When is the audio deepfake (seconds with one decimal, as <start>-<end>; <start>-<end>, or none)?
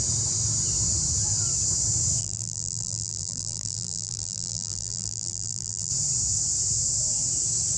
2.2-5.9